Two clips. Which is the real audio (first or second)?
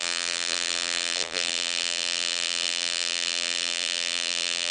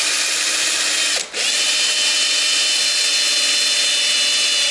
second